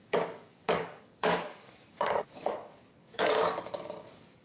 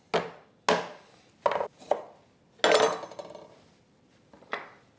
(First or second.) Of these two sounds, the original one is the second